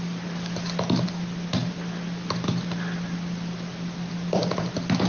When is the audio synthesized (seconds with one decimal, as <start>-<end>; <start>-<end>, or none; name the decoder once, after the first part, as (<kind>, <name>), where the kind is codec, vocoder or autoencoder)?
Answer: none